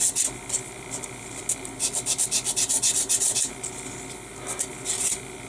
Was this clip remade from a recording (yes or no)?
no